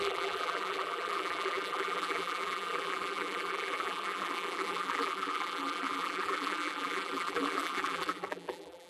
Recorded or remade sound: remade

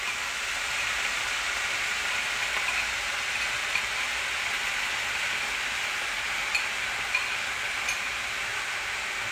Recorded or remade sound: recorded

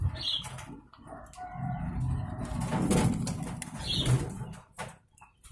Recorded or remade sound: recorded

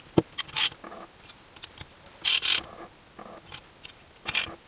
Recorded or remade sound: recorded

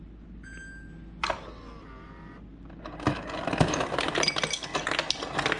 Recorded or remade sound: recorded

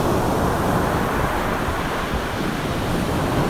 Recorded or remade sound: recorded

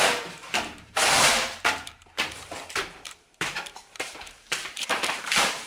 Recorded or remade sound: remade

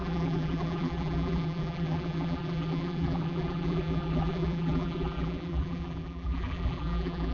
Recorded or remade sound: remade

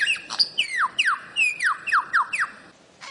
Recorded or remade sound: remade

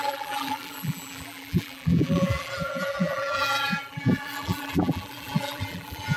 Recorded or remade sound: remade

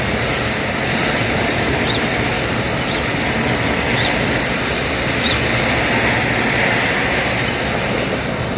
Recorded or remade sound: recorded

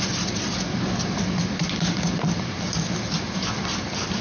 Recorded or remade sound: remade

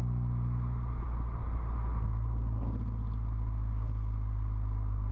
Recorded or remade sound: recorded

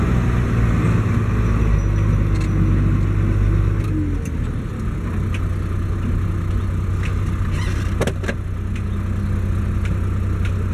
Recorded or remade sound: recorded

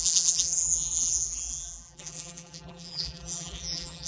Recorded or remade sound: remade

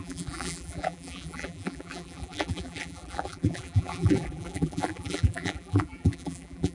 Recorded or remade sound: remade